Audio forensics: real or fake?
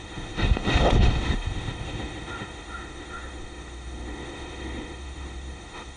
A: fake